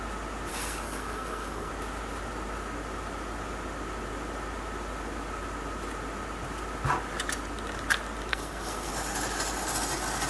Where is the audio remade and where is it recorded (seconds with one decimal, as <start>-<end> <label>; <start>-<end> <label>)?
0.0-0.5 recorded; 0.5-1.7 remade; 1.7-8.3 recorded; 8.3-8.9 remade; 8.9-10.3 recorded